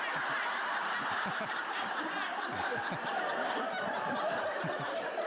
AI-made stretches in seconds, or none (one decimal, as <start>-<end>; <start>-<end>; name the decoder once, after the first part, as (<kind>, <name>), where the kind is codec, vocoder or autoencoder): none